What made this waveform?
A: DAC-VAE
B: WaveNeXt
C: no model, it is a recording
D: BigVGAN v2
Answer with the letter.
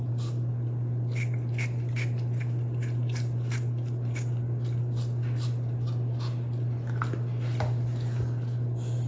C